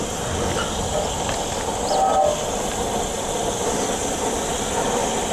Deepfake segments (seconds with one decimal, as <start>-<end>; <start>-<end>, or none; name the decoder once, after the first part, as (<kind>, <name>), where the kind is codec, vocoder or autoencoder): none